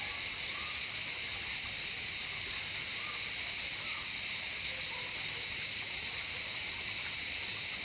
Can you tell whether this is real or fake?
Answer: real